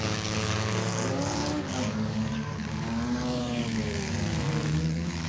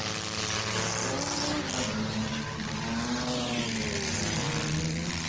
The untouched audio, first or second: second